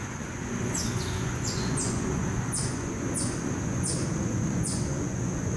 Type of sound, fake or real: fake